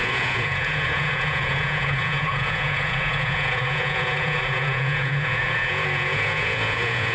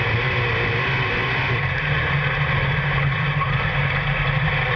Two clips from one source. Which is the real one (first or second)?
second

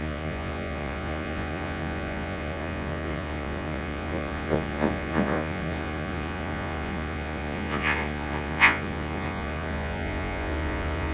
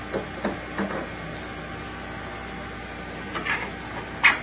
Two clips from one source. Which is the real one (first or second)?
second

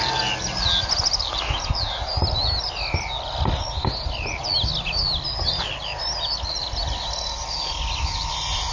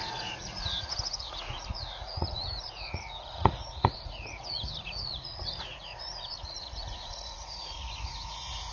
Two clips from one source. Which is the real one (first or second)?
first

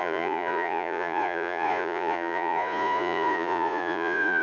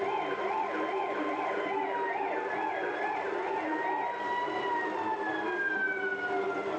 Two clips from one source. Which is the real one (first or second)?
second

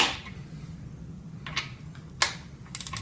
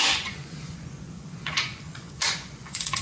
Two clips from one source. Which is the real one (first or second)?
first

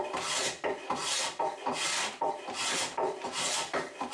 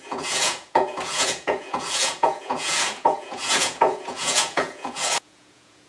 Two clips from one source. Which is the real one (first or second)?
first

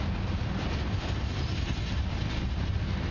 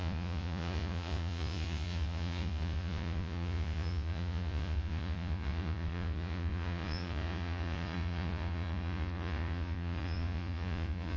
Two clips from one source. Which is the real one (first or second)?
first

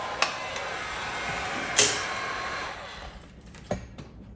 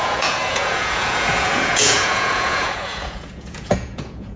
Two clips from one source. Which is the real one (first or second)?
first